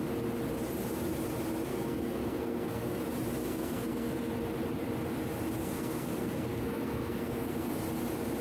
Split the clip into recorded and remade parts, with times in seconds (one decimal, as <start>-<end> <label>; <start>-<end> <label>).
0.0-1.7 recorded; 1.7-3.0 remade; 3.0-3.4 recorded; 3.4-4.3 remade; 4.3-5.6 recorded; 5.6-7.8 remade; 7.8-8.4 recorded